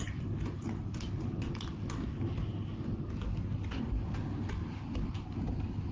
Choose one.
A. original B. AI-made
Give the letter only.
A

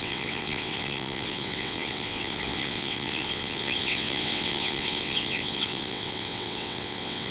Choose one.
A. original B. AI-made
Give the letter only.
B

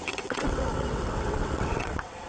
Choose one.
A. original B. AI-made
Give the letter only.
B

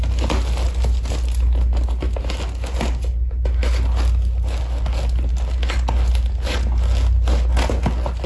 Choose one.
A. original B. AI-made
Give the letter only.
A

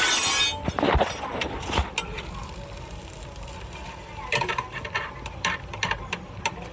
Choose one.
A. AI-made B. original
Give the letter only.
B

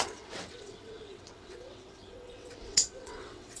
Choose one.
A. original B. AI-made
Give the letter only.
B